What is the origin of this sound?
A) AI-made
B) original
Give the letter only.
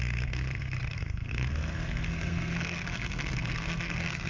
A